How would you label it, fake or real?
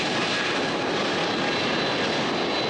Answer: real